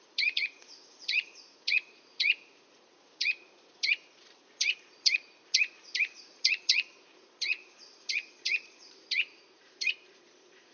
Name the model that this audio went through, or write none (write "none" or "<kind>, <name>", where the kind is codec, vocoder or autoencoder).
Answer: vocoder, Vocos